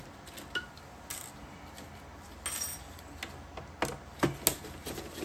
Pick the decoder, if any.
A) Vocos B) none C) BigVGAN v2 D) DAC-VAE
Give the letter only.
B